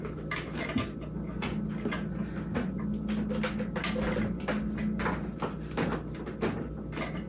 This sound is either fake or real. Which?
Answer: real